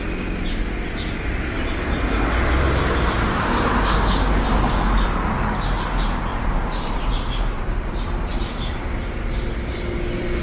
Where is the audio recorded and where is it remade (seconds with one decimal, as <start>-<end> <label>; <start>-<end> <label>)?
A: 0.0-6.3 recorded; 6.3-8.8 remade; 8.8-10.4 recorded